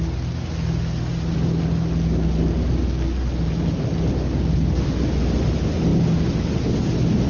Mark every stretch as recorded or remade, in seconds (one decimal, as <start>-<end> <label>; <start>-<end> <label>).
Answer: 0.0-7.3 recorded